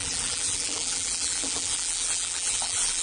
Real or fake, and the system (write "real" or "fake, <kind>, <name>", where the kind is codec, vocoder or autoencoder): fake, vocoder, BigVGAN v2